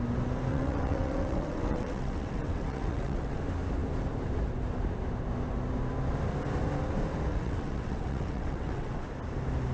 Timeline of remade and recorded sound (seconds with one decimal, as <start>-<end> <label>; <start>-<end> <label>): 0.0-0.5 recorded; 0.5-3.4 remade; 3.4-7.3 recorded; 7.3-8.9 remade; 8.9-9.7 recorded